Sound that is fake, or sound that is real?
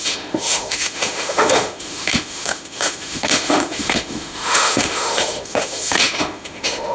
fake